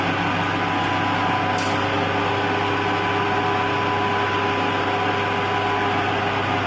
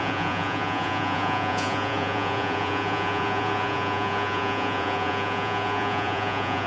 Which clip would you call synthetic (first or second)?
second